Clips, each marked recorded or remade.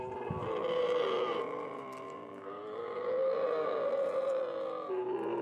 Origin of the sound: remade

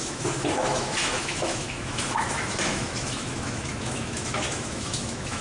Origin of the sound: remade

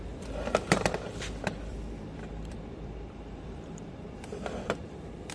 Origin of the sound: remade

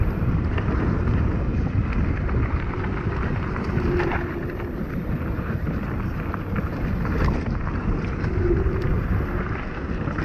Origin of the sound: recorded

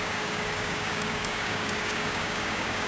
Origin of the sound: remade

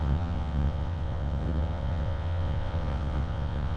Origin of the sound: remade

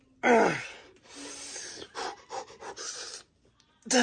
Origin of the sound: recorded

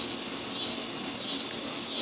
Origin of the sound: recorded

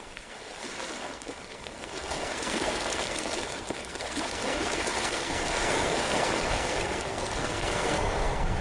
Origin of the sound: remade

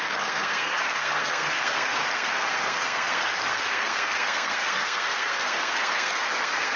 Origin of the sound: remade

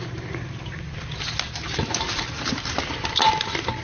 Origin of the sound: recorded